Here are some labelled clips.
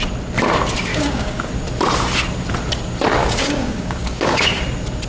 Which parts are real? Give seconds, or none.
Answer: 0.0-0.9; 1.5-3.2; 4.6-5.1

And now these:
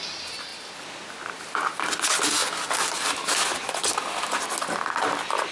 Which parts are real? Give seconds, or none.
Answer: 0.0-5.5

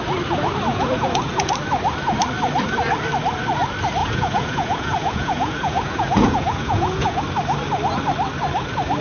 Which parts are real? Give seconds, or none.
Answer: 0.0-0.7; 1.5-4.0; 7.2-9.0

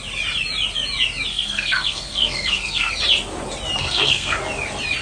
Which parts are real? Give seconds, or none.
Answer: 0.0-1.3; 2.9-3.8; 4.4-5.0

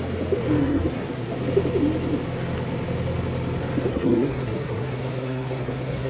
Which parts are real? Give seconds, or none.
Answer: 0.0-0.6; 1.3-3.9